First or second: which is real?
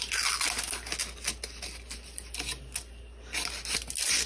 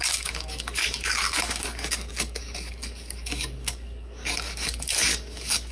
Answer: first